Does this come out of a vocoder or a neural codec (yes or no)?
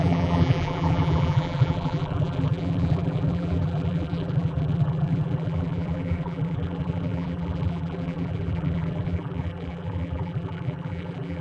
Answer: yes